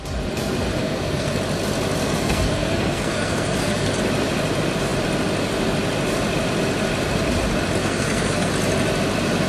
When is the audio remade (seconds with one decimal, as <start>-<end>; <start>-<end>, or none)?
0.8-1.4; 2.0-4.0; 7.8-8.5